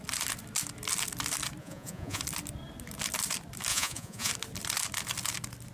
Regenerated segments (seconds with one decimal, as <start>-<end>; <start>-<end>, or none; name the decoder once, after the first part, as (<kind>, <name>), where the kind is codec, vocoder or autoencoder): 1.6-2.2 (vocoder, Vocos); 3.7-4.3